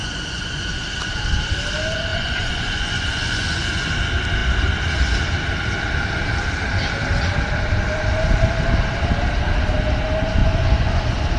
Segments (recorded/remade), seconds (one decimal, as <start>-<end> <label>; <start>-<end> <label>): 0.0-0.7 remade; 0.7-2.1 recorded; 2.1-3.9 remade; 3.9-10.4 recorded; 10.4-11.0 remade; 11.0-11.4 recorded